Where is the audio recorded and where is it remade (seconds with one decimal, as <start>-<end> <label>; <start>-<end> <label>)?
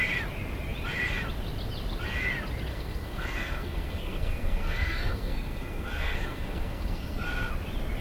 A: 0.0-2.7 recorded; 2.7-7.5 remade; 7.5-8.0 recorded